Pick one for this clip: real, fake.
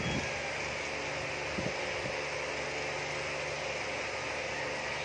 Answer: real